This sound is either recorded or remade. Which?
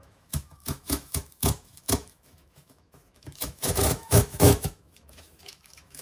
remade